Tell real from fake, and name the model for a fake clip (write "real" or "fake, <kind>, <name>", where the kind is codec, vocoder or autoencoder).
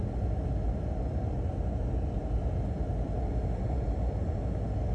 real